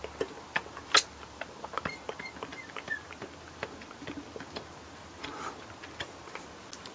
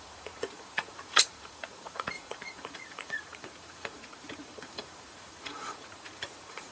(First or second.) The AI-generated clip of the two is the second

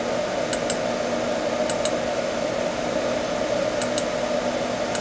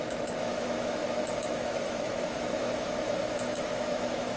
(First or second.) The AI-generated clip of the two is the second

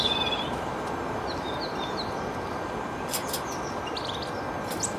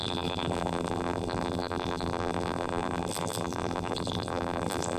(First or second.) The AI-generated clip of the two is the second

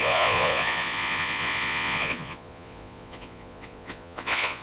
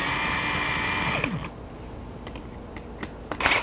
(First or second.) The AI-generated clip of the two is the first